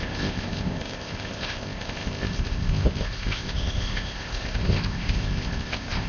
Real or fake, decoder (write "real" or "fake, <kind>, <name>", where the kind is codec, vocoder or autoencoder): fake, codec, ZipCodec